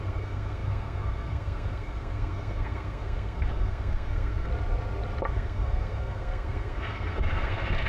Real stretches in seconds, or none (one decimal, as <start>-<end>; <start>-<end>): 4.5-5.3